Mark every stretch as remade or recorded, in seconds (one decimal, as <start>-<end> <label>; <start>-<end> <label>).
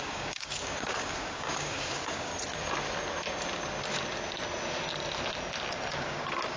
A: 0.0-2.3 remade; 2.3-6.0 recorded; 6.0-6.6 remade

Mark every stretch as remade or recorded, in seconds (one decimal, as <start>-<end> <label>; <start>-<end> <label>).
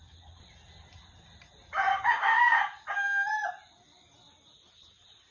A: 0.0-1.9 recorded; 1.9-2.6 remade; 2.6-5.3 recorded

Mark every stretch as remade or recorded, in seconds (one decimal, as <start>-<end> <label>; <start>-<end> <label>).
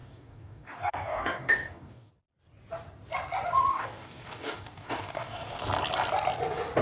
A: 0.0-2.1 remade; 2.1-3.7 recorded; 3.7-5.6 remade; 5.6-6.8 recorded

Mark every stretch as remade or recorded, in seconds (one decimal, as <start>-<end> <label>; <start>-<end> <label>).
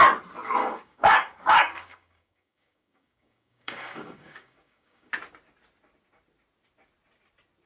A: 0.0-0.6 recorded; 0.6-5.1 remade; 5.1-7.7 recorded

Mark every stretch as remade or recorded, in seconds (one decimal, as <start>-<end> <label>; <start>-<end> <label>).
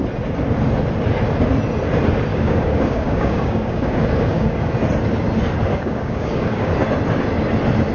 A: 0.0-2.3 recorded; 2.3-4.7 remade; 4.7-5.7 recorded; 5.7-6.7 remade; 6.7-7.9 recorded